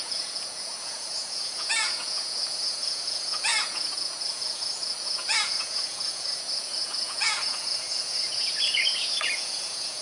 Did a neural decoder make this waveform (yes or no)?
yes